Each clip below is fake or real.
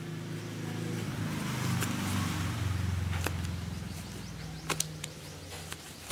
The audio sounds real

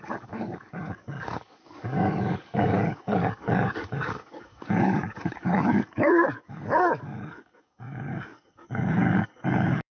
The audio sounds fake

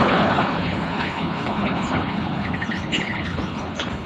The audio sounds fake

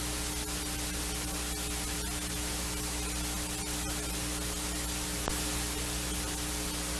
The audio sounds real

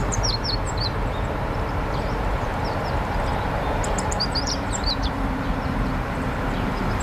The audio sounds fake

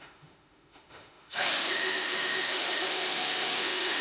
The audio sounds fake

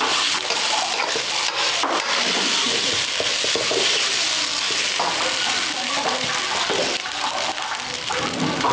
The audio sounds real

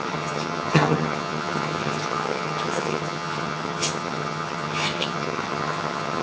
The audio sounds fake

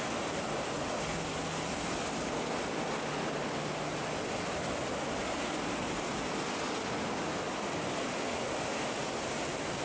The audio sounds real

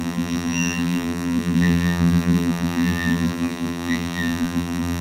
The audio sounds fake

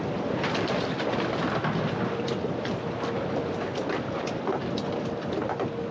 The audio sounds real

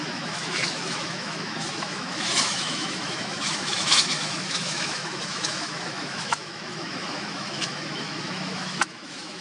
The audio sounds fake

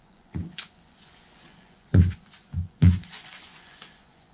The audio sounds fake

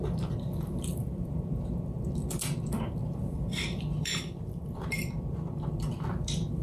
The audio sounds fake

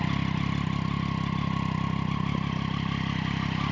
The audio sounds real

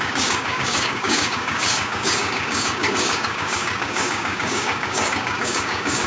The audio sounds fake